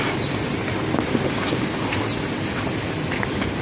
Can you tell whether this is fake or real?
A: real